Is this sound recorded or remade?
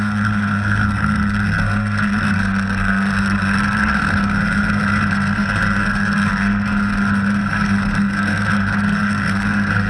remade